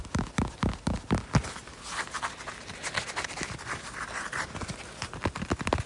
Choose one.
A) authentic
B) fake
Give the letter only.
A